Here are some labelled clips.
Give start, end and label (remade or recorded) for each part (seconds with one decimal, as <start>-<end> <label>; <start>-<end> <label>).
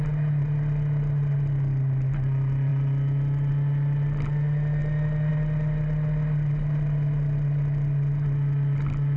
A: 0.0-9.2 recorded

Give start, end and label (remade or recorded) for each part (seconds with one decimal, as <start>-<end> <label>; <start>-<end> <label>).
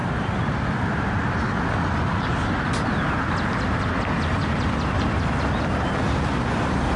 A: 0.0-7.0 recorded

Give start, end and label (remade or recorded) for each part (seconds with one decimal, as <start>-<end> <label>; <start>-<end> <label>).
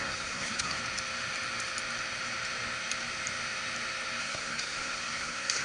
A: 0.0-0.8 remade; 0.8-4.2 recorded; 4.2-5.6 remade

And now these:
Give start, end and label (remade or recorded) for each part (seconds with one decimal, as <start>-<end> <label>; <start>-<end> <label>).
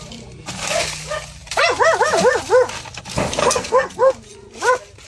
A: 0.0-3.4 recorded; 3.4-4.1 remade; 4.1-5.1 recorded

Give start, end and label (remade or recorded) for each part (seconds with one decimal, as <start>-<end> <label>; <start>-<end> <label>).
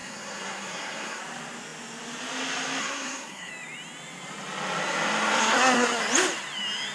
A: 0.0-1.2 remade; 1.2-2.8 recorded; 2.8-3.5 remade; 3.5-5.4 recorded; 5.4-6.0 remade; 6.0-6.9 recorded